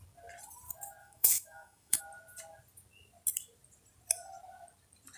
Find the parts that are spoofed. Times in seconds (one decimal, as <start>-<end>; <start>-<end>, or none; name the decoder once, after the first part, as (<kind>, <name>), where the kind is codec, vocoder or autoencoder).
1.0-2.0 (autoencoder, DAC-VAE)